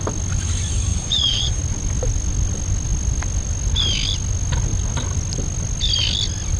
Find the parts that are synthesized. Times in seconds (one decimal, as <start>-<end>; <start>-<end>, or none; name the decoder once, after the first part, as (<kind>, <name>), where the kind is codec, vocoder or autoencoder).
0.9-1.6 (vocoder, Vocos)